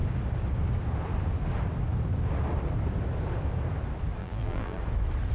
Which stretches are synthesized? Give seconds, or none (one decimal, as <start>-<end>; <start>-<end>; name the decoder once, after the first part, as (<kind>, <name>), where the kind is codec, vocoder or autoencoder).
4.2-4.8 (vocoder, BigVGAN v2)